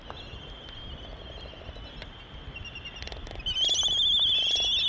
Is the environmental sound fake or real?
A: real